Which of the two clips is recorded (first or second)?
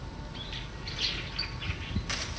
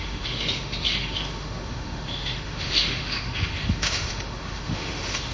first